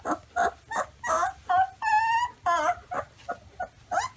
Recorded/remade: recorded